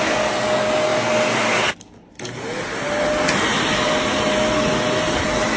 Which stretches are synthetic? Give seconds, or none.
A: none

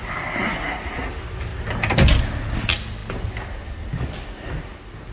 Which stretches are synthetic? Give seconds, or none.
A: 0.5-1.1 (vocoder, Vocos)

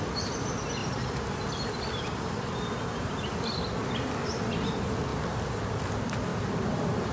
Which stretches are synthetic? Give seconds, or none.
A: 0.8-1.5 (vocoder, BigVGAN v2); 2.9-3.6; 6.3-7.1

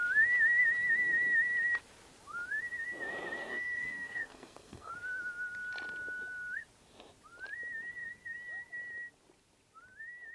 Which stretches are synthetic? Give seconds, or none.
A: 3.4-4.9 (codec, SNAC)